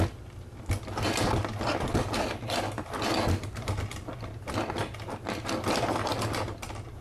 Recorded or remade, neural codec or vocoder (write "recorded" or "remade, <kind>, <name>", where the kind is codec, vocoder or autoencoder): recorded